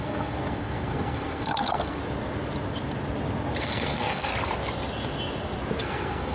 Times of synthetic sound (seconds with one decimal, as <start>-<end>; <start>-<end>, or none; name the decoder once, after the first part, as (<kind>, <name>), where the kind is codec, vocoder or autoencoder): 0.0-2.0 (codec, SNAC); 3.6-4.3; 5.8-6.3